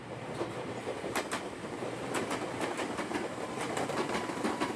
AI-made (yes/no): yes